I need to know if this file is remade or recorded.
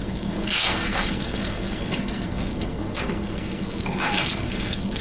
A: remade